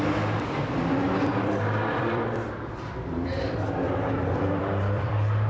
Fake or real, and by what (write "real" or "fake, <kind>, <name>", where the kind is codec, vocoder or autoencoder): fake, vocoder, BigVGAN v2